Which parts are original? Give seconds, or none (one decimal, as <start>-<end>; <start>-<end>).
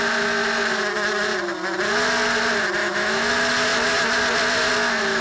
0.0-2.8; 3.3-5.2